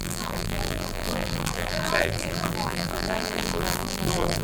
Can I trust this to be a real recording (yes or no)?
no